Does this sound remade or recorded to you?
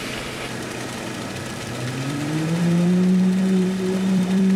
remade